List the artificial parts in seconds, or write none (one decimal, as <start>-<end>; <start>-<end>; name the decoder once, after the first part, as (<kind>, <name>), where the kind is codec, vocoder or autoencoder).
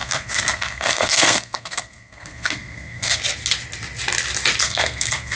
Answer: 0.0-3.2 (codec, SNAC); 4.6-5.4